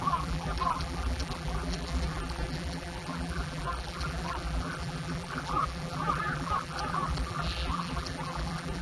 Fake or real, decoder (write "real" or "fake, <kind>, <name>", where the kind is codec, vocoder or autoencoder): fake, vocoder, BigVGAN v2